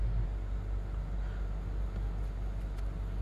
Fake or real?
real